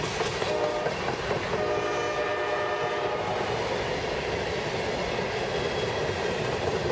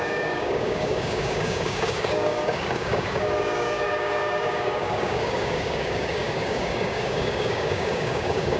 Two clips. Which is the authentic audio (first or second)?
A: first